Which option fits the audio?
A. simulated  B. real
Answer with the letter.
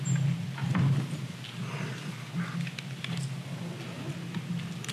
B